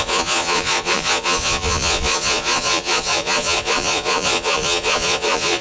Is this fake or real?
fake